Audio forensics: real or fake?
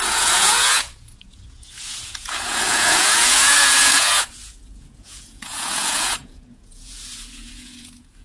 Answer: fake